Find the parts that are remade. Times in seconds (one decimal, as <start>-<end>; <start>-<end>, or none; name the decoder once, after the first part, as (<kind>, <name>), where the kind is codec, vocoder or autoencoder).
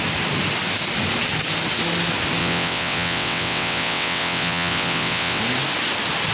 2.4-5.4 (vocoder, WaveNeXt)